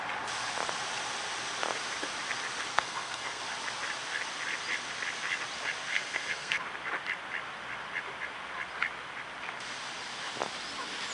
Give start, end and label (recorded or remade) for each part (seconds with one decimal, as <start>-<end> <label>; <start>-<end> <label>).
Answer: 0.0-2.7 recorded; 2.7-3.4 remade; 3.4-5.9 recorded; 5.9-6.6 remade; 6.6-11.1 recorded